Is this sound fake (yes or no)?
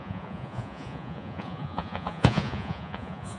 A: yes